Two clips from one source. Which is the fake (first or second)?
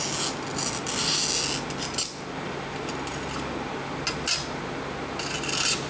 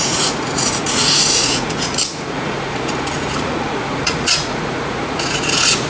second